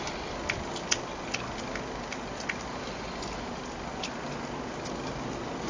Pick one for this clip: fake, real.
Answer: real